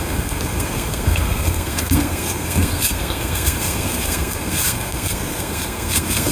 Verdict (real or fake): fake